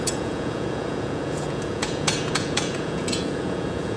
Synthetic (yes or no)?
yes